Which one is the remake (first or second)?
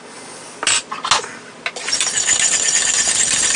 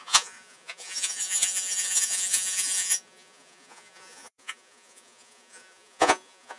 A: second